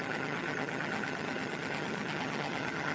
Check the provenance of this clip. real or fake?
fake